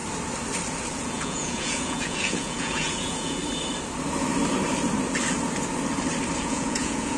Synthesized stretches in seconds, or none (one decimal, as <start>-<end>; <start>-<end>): 0.9-3.4; 6.4-7.2